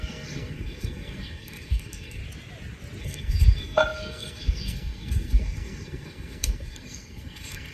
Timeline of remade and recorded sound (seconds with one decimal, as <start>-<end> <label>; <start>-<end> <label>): 0.0-2.2 remade; 2.2-3.0 recorded; 3.0-7.7 remade